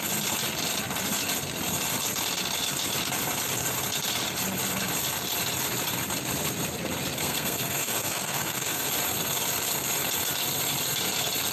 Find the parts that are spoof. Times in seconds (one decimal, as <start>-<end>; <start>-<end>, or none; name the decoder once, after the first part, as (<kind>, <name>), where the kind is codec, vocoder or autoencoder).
7.2-8.9 (codec, SNAC)